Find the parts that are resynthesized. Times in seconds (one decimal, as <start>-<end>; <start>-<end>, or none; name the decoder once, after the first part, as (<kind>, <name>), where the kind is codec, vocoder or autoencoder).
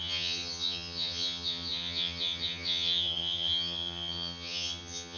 0.0-5.2 (vocoder, HiFi-GAN)